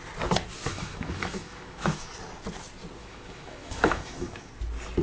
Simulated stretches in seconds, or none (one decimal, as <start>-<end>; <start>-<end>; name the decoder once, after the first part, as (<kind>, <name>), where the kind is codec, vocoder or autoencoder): 0.7-2.1 (autoencoder, DAC-VAE); 3.0-4.5